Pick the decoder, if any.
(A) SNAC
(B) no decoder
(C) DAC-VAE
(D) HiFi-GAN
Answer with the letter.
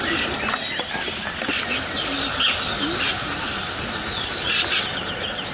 B